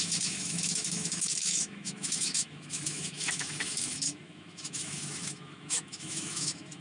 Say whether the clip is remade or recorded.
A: remade